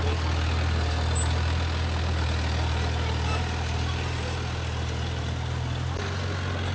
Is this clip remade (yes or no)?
no